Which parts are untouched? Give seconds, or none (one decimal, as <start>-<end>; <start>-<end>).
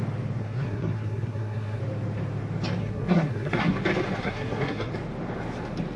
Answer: 0.0-0.4; 1.8-2.8; 3.7-4.2; 4.9-6.0